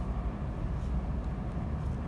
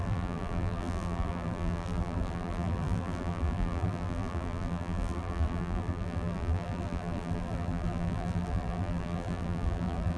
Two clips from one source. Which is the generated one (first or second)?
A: second